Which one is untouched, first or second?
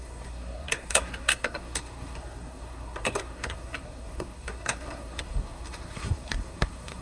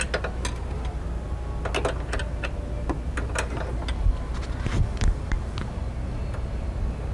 second